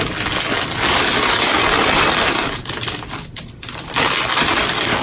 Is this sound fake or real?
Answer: real